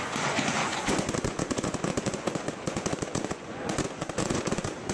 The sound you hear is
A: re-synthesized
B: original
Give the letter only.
A